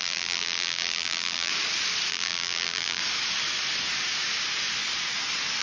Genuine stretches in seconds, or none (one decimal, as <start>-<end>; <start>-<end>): 1.5-2.1; 3.0-5.6